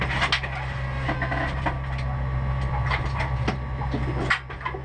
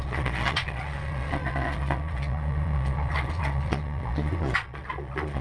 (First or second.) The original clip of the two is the first